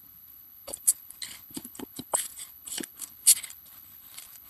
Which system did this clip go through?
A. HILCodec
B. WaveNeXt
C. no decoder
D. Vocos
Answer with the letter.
A